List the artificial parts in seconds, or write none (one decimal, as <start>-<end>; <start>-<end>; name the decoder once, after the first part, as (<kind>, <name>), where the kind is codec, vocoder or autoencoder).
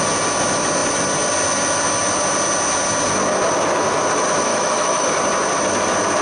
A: 4.5-5.1 (autoencoder, DAC-VAE)